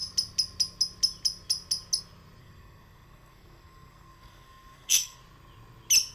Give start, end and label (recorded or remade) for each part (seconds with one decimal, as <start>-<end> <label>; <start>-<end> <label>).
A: 0.0-2.4 recorded; 2.4-5.2 remade; 5.2-6.1 recorded